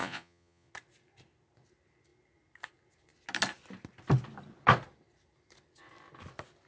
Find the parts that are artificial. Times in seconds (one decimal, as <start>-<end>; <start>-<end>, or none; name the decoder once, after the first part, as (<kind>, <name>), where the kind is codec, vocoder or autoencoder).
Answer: 0.0-0.7 (vocoder, Vocos)